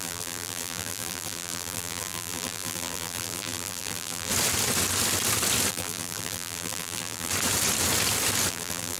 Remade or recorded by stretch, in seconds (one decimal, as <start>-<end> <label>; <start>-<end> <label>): 0.0-4.3 remade; 4.3-5.7 recorded; 5.7-7.3 remade; 7.3-8.5 recorded; 8.5-9.0 remade